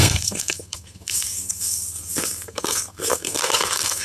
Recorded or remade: remade